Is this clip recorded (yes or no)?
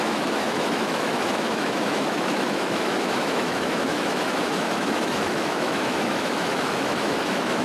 no